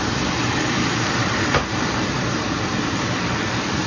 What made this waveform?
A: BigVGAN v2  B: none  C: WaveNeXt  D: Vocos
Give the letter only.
A